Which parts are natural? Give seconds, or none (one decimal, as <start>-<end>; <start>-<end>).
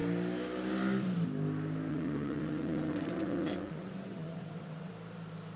0.0-1.9; 4.9-5.6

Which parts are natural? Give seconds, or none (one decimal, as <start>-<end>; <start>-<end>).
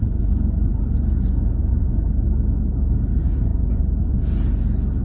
0.8-1.6; 2.1-3.5; 4.2-5.0